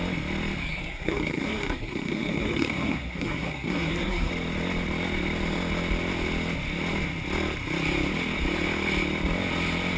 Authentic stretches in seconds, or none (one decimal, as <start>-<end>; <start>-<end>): 0.0-0.7; 4.3-10.0